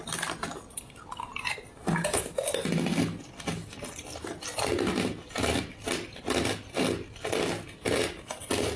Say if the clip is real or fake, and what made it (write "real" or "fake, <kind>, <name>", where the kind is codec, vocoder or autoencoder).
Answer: real